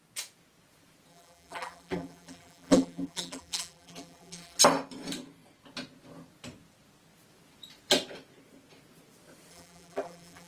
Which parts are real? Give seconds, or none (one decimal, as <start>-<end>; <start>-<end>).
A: 0.0-1.1; 4.6-9.5